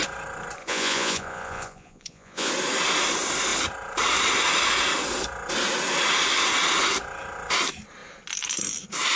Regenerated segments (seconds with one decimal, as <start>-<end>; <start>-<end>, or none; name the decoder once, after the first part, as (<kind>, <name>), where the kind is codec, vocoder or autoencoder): 0.6-2.5 (vocoder, Vocos)